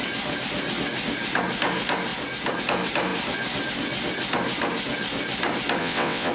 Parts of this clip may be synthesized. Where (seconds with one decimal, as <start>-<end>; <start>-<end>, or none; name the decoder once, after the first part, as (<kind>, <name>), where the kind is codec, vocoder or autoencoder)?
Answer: 5.8-6.3 (vocoder, WaveNeXt)